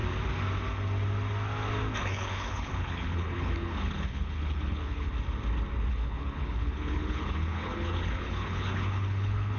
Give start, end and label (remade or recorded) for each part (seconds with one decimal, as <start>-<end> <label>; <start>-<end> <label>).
0.0-2.0 recorded; 2.0-5.1 remade; 5.1-5.9 recorded; 5.9-9.6 remade